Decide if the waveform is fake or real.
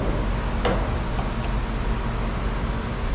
real